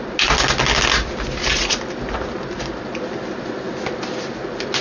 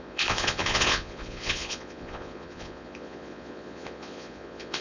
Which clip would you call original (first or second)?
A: first